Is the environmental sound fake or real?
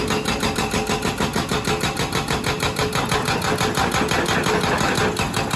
real